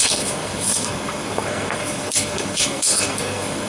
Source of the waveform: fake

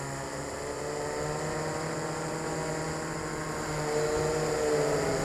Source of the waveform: real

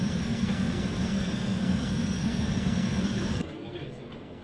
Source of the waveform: fake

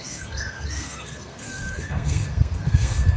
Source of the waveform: fake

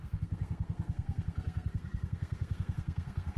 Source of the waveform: fake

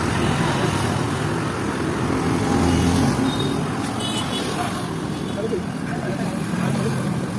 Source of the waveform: real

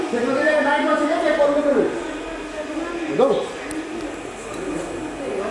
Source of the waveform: real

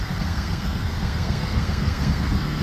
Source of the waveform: fake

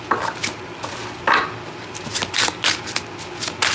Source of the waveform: real